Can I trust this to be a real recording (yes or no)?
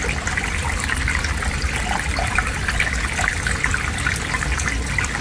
yes